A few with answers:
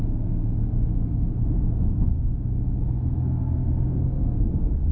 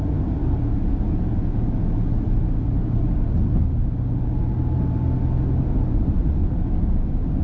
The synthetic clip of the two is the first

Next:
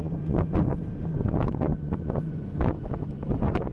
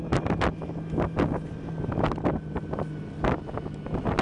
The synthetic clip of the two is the first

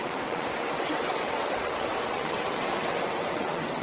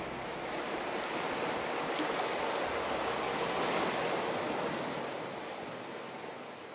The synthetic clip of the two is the first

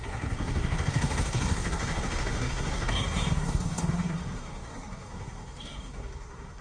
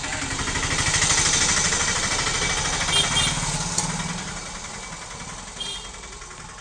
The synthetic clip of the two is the first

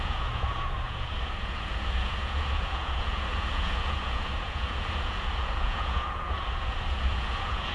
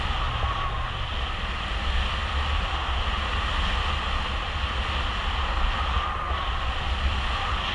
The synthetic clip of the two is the first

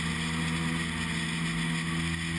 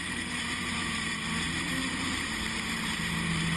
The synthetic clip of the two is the second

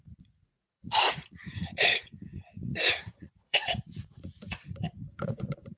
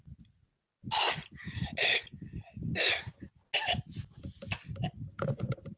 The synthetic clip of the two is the first